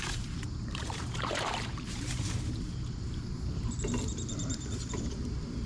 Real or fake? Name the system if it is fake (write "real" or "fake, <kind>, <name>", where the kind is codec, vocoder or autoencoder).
fake, vocoder, BigVGAN v2